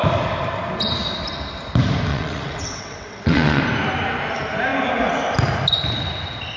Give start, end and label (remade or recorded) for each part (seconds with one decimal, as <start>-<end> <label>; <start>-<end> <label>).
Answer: 0.0-2.1 recorded; 2.1-3.6 remade; 3.6-6.6 recorded

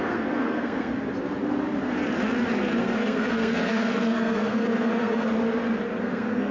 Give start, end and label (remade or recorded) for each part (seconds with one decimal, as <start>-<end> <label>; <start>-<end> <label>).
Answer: 0.0-0.9 remade; 0.9-2.8 recorded; 2.8-5.3 remade; 5.3-6.0 recorded; 6.0-6.5 remade

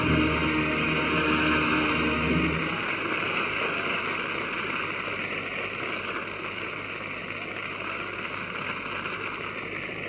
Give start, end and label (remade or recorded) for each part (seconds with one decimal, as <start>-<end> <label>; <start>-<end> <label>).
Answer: 0.0-10.1 recorded

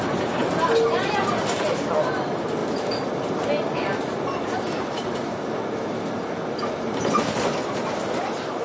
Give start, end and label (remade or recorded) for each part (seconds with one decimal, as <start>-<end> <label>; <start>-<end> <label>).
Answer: 0.0-8.6 recorded

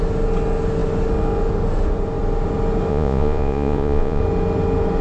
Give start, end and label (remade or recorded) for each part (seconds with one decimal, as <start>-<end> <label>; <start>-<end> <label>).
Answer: 0.0-2.9 recorded; 2.9-4.2 remade; 4.2-5.0 recorded

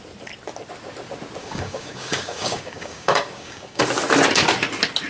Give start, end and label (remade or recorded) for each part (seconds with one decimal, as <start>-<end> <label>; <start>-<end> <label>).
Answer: 0.0-1.4 recorded; 1.4-3.8 remade; 3.8-5.1 recorded

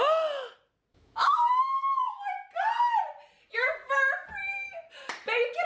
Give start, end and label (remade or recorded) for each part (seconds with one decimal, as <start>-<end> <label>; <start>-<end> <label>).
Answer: 0.0-0.9 recorded; 0.9-2.2 remade; 2.2-4.4 recorded; 4.4-4.9 remade; 4.9-5.7 recorded